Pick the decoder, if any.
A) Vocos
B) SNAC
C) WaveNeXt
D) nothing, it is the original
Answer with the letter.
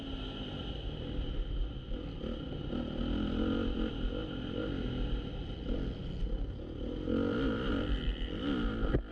D